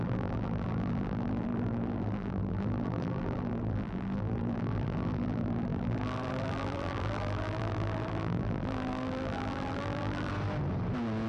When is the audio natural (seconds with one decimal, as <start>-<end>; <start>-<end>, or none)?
10.3-11.3